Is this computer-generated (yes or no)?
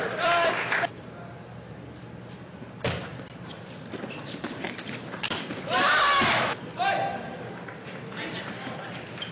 no